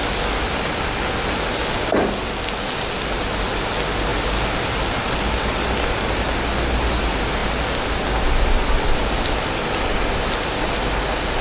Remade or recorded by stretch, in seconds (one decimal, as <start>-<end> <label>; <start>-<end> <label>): 0.0-11.4 recorded